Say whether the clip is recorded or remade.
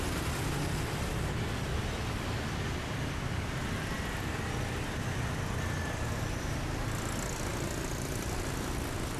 recorded